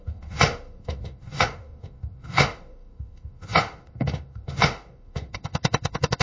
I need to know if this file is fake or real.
fake